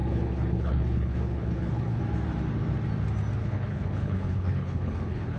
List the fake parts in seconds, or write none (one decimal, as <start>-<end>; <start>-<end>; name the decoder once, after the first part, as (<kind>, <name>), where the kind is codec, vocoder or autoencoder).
0.0-2.0 (codec, HILCodec); 3.4-5.4